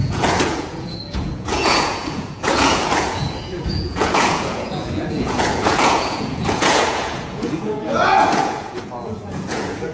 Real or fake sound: fake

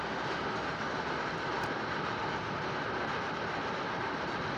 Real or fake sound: real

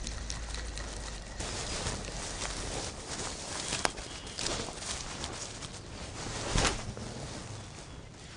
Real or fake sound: real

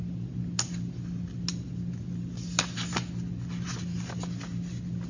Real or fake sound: real